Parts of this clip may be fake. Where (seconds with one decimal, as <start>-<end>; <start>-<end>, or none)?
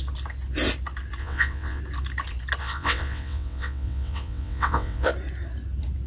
1.2-1.8; 2.6-5.1